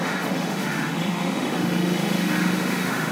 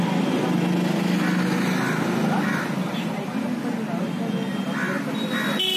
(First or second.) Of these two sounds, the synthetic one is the first